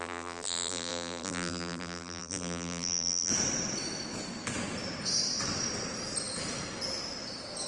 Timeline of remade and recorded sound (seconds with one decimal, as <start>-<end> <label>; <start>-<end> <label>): 0.0-3.3 remade; 3.3-7.7 recorded